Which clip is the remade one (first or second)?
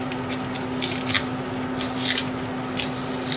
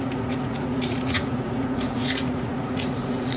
second